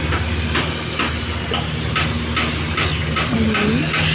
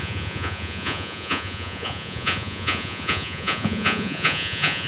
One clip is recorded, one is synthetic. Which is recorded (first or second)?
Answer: first